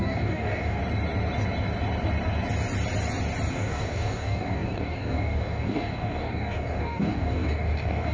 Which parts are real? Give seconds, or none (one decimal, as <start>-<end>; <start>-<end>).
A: 0.8-3.5